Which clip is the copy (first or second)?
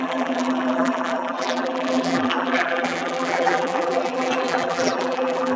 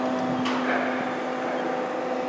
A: first